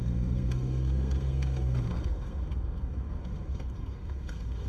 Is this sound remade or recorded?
remade